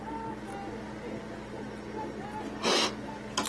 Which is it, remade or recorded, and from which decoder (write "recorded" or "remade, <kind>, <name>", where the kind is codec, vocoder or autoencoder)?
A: recorded